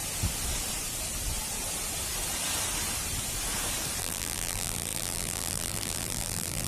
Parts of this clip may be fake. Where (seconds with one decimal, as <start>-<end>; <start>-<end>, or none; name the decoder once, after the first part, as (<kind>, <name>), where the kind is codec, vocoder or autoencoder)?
4.0-6.7 (vocoder, BigVGAN v2)